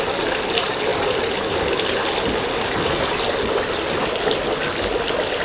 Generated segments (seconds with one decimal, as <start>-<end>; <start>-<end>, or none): none